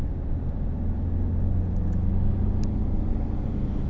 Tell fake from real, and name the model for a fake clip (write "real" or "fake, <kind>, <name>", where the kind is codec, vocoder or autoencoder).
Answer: real